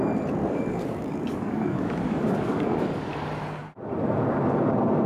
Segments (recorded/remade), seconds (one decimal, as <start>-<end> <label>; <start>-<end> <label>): 0.0-0.4 recorded; 0.4-3.1 remade; 3.1-5.1 recorded